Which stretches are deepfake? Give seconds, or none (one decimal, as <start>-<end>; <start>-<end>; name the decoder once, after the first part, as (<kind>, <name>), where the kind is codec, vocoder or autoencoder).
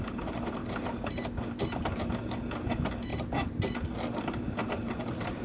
none